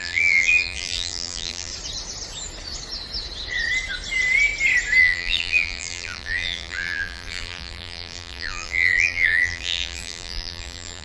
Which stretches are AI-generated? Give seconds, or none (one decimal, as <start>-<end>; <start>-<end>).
0.0-1.7; 5.0-11.0